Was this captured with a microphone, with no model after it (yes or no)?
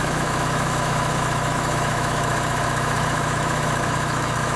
no